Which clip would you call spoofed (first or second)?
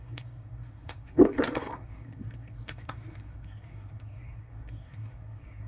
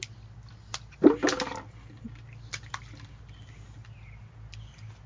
first